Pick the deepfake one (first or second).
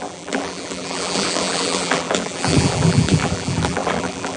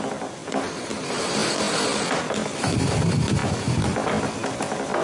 first